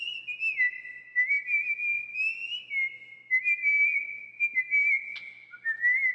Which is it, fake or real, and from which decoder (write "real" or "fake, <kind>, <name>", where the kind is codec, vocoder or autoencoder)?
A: real